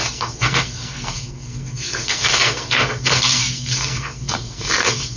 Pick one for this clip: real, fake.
fake